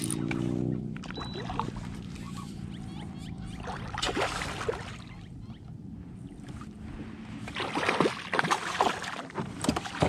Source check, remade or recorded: recorded